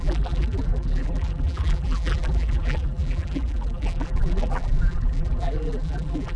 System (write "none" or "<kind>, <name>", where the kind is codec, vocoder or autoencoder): vocoder, BigVGAN v2